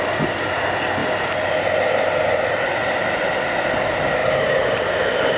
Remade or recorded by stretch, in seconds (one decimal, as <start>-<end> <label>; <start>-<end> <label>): 0.0-4.2 recorded; 4.2-4.8 remade; 4.8-5.4 recorded